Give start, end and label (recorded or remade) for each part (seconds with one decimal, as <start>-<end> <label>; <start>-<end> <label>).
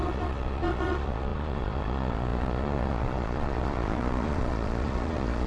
0.0-5.5 remade